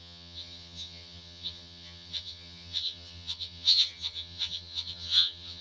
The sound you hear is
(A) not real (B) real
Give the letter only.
A